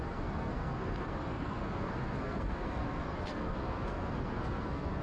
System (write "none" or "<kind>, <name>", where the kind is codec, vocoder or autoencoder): codec, SNAC